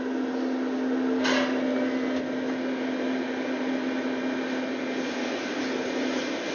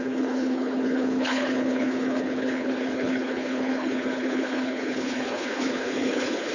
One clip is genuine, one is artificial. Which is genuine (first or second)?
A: first